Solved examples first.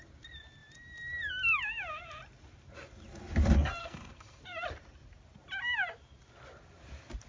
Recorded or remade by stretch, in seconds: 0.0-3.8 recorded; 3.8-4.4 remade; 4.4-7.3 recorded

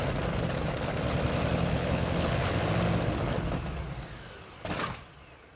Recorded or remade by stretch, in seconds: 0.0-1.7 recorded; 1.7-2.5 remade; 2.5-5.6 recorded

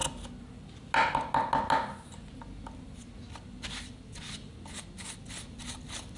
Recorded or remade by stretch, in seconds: 0.0-3.7 recorded; 3.7-6.2 remade

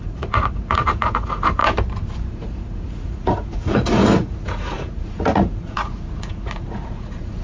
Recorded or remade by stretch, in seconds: 0.0-1.6 remade; 1.6-2.3 recorded; 2.3-7.4 remade